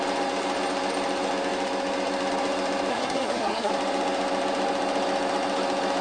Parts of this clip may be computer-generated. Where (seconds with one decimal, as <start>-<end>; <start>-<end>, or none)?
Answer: 2.9-3.7